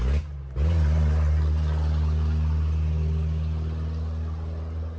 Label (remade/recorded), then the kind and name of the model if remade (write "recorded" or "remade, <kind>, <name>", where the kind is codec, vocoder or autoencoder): recorded